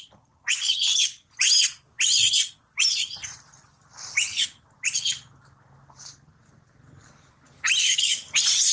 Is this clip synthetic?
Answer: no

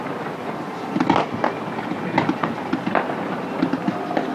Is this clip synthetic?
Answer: no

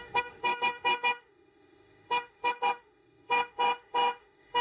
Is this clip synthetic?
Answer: yes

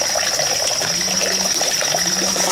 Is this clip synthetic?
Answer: no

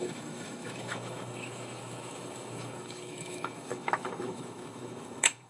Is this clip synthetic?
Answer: yes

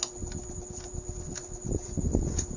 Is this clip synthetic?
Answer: no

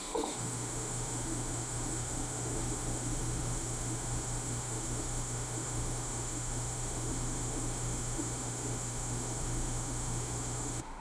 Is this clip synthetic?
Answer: yes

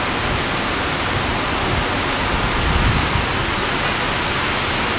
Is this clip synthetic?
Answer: no